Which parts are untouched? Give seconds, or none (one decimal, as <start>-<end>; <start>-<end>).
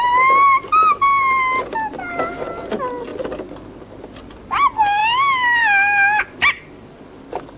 0.0-7.6